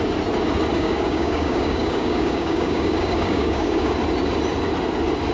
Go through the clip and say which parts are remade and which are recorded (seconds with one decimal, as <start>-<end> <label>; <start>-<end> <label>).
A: 0.0-0.7 recorded; 0.7-3.9 remade; 3.9-5.3 recorded